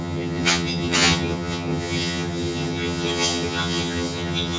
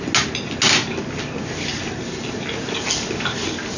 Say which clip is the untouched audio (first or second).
second